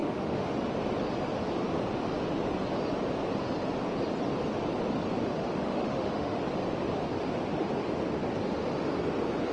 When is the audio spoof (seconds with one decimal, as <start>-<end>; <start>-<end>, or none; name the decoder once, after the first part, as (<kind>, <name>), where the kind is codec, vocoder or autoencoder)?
0.0-0.5 (autoencoder, DAC-VAE); 5.4-6.4